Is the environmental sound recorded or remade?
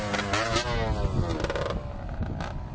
recorded